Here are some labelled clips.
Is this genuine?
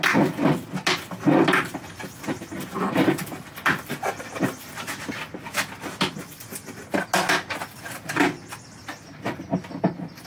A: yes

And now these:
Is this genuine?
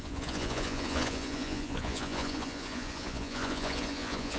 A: no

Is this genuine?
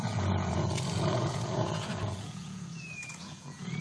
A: no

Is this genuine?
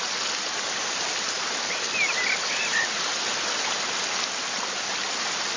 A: yes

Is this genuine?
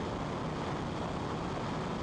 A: yes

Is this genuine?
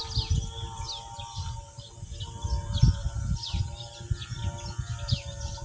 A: yes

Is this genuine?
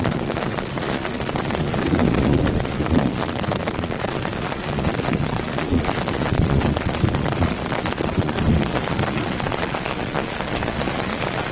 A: no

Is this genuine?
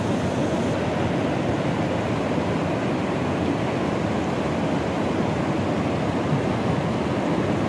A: yes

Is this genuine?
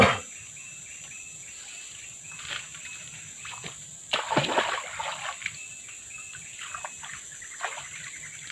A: yes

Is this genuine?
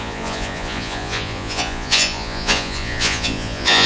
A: no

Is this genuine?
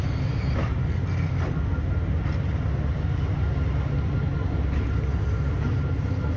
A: yes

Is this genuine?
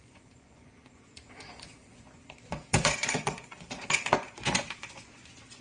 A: no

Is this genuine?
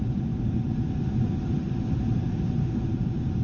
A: yes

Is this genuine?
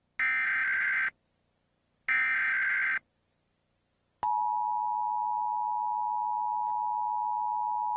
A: yes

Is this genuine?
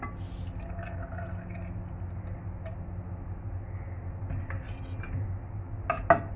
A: yes